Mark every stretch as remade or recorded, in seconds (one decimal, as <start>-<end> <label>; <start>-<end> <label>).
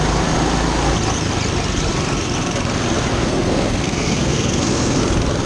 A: 0.0-3.1 recorded; 3.1-5.0 remade; 5.0-5.5 recorded